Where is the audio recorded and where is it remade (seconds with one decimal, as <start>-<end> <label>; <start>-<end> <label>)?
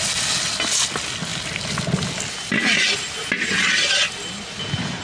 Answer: 0.0-5.0 recorded